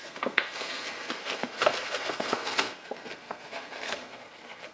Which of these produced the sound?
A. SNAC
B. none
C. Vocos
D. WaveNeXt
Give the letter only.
A